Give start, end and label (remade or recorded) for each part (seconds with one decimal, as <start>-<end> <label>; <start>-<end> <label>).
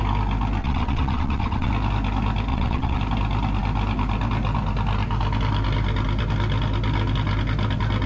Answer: 0.0-0.6 recorded; 0.6-1.7 remade; 1.7-2.5 recorded; 2.5-3.0 remade; 3.0-8.1 recorded